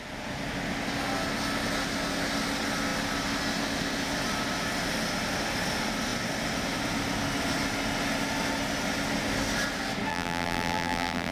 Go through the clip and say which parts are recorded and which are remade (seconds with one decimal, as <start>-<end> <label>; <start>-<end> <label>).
0.0-10.1 recorded; 10.1-11.3 remade